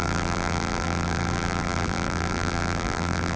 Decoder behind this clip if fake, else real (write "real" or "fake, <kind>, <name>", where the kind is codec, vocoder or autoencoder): fake, vocoder, BigVGAN v2